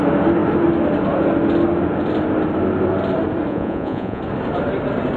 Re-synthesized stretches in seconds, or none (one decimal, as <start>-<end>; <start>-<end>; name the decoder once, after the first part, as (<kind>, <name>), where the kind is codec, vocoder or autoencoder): 3.5-4.2 (vocoder, Vocos)